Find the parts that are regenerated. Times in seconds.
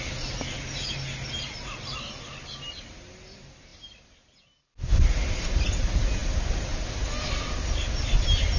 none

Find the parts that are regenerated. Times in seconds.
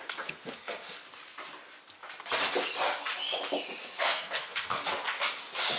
0.0-1.0; 4.0-4.8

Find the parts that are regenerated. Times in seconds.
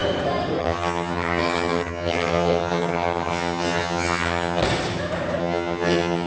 0.6-4.6; 5.4-6.3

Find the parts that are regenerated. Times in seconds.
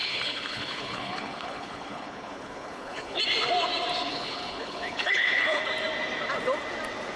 0.0-3.2; 4.1-5.6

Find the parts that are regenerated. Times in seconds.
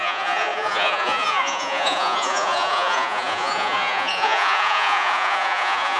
0.0-6.0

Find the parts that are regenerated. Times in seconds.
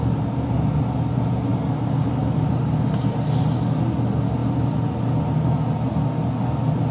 none